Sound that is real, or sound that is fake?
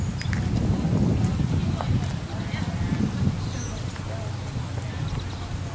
real